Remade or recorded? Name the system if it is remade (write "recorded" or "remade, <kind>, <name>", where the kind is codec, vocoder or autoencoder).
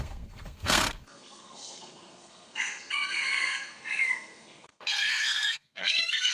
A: remade, codec, SNAC